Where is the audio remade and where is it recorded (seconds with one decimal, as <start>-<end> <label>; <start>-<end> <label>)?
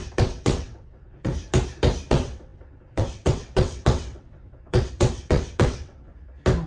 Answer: 0.0-1.3 remade; 1.3-2.1 recorded; 2.1-6.1 remade; 6.1-6.7 recorded